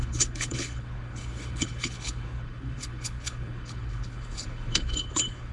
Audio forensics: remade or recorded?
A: remade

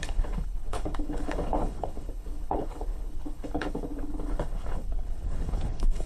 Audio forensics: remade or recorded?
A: remade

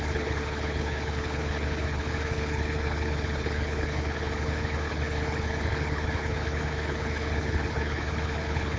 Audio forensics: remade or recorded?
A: remade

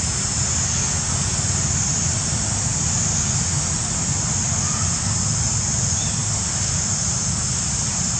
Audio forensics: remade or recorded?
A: recorded